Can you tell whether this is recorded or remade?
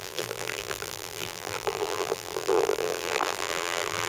remade